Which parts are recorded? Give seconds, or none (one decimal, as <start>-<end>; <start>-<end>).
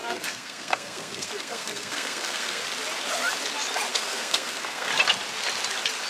2.6-3.9; 4.9-6.1